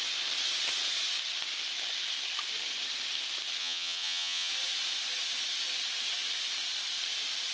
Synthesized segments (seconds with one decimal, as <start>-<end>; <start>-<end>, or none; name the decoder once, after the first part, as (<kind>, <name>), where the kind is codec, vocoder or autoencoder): 3.6-4.5 (vocoder, HiFi-GAN)